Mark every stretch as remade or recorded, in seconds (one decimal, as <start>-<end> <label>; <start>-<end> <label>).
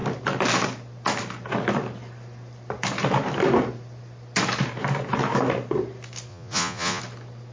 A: 0.0-6.3 recorded; 6.3-7.0 remade; 7.0-7.5 recorded